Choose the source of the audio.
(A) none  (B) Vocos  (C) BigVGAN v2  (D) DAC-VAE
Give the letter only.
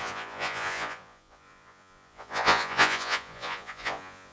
B